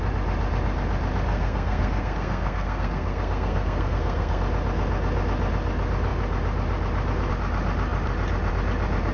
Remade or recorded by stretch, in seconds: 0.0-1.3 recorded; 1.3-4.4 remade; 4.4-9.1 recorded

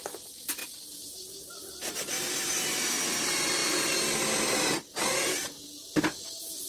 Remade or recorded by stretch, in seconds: 0.0-6.7 recorded

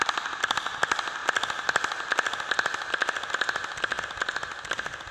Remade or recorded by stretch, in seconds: 0.0-5.1 recorded

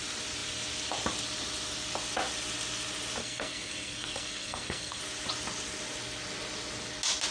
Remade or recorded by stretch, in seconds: 0.0-3.2 recorded; 3.2-5.0 remade; 5.0-7.3 recorded

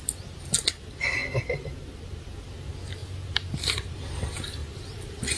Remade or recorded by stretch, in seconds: 0.0-3.0 recorded; 3.0-4.0 remade; 4.0-4.6 recorded; 4.6-5.4 remade

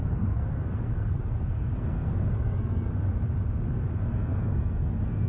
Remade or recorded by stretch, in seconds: 0.0-2.9 remade; 2.9-4.1 recorded; 4.1-5.3 remade

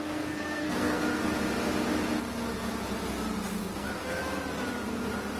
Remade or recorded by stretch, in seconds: 0.0-1.2 remade; 1.2-3.6 recorded; 3.6-4.2 remade; 4.2-5.4 recorded

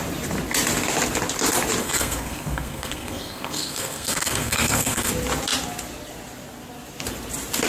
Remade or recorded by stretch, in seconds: 0.0-1.8 recorded; 1.8-5.1 remade; 5.1-7.7 recorded